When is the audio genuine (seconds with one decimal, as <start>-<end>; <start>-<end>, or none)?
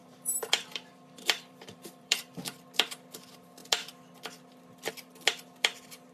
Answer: 2.4-6.1